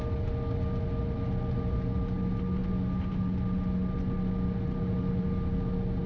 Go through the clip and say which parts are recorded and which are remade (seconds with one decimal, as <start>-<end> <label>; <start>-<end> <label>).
0.0-6.1 recorded